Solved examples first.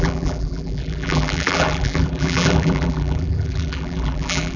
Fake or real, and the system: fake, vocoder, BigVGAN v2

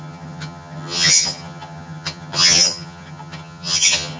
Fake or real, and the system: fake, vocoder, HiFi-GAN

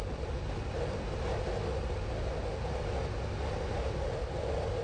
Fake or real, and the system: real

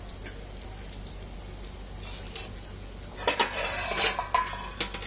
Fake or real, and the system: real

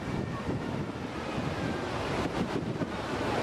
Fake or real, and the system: real